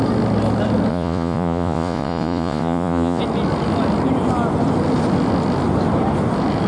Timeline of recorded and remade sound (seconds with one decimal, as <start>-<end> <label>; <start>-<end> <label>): 0.0-0.9 recorded; 0.9-3.2 remade; 3.2-6.7 recorded